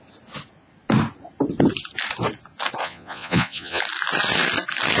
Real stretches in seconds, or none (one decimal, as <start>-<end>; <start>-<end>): 0.0-2.8; 3.8-5.0